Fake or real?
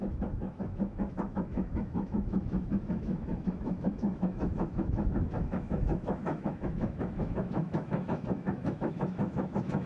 fake